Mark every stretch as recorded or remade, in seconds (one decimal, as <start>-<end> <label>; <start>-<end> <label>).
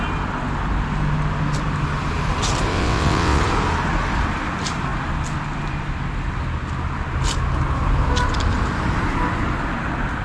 0.0-2.7 recorded; 2.7-3.4 remade; 3.4-10.2 recorded